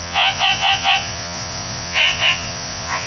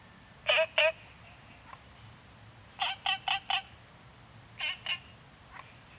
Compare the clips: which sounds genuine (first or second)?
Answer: second